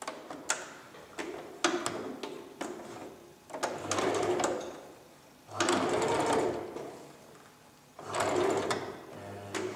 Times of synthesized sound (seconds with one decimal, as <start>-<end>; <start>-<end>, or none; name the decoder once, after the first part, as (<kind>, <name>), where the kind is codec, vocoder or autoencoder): none